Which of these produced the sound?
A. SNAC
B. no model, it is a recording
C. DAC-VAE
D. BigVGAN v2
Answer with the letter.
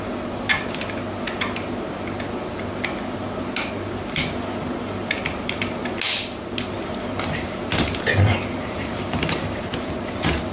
B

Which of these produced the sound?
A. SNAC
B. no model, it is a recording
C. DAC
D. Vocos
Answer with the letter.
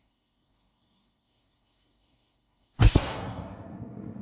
A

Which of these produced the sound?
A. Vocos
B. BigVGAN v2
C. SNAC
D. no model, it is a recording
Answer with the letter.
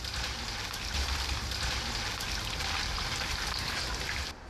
D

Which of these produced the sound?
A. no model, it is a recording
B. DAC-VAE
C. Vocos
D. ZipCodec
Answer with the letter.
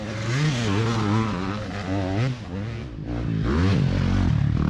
A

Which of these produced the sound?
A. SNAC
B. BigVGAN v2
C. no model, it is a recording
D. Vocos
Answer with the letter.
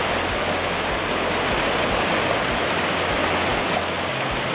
C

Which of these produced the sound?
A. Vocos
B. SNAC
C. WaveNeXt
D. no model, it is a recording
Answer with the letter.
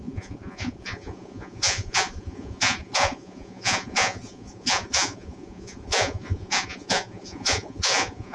A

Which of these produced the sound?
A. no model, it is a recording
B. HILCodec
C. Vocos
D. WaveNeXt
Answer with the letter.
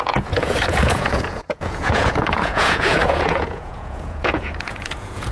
C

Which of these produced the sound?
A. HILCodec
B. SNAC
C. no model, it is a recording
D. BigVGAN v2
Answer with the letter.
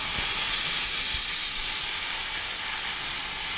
C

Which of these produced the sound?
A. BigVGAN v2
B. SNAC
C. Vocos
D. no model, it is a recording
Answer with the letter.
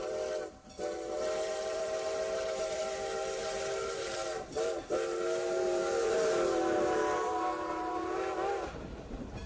A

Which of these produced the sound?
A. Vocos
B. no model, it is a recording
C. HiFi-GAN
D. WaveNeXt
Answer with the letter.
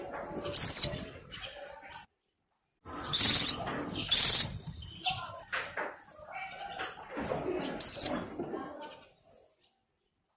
B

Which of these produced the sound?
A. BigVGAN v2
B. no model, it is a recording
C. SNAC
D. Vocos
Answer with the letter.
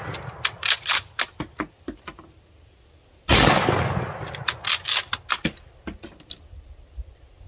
B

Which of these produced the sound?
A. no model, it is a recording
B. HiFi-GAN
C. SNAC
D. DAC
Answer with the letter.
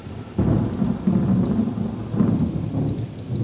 A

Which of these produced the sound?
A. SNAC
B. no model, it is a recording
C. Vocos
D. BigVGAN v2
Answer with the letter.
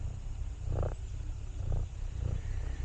B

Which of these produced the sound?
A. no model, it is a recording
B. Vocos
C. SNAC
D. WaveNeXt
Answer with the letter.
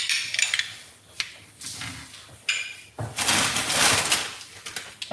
A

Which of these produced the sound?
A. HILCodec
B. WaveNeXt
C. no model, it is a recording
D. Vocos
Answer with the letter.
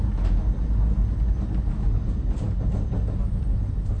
C